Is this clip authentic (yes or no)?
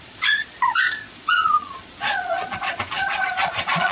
no